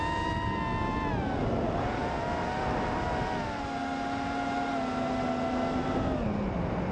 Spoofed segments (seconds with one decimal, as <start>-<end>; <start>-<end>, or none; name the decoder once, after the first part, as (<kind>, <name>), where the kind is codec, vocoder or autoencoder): none